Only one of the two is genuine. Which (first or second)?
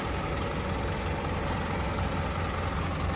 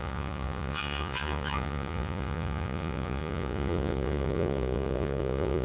first